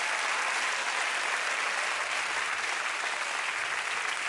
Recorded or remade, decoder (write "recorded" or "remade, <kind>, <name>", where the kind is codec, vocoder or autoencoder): recorded